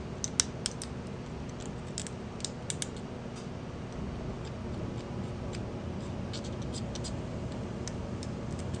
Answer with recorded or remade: recorded